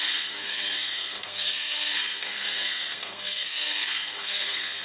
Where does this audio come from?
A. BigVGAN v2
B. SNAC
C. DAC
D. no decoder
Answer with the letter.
B